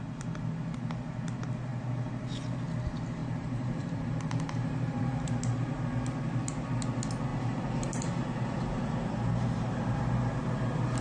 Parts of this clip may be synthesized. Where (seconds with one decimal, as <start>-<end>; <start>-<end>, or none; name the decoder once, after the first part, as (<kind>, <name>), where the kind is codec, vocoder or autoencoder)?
1.7-2.3 (vocoder, BigVGAN v2); 3.2-5.3; 7.3-10.0